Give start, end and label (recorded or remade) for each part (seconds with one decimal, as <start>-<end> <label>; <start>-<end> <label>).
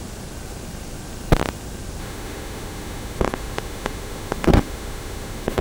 0.0-2.0 recorded; 2.0-5.6 remade